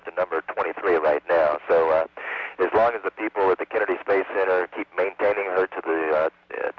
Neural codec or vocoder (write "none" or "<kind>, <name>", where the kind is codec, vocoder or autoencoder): none